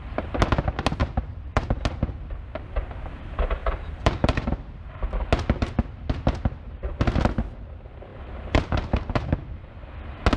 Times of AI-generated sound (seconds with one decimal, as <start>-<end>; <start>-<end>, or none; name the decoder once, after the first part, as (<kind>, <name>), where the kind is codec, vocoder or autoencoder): 1.0-1.8 (vocoder, BigVGAN v2); 3.6-4.9; 8.1-9.7